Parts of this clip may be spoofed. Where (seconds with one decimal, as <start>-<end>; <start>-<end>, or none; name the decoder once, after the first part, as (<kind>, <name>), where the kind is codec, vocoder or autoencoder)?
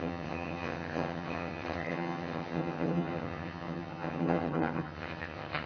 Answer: 0.0-5.7 (vocoder, HiFi-GAN)